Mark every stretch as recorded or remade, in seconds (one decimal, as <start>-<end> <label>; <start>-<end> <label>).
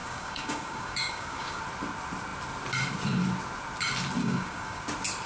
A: 0.0-1.6 remade; 1.6-4.2 recorded; 4.2-4.8 remade; 4.8-5.3 recorded